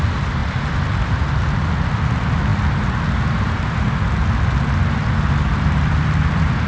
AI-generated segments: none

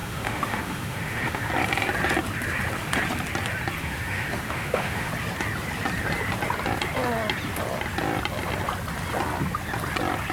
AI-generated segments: 0.0-1.5 (autoencoder, DAC-VAE); 3.8-5.1

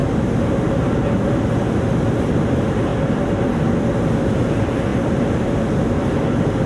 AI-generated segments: 4.9-5.8 (vocoder, BigVGAN v2)